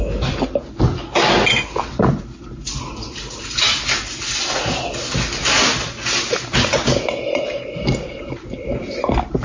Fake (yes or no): no